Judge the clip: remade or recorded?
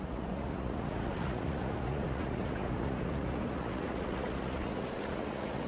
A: remade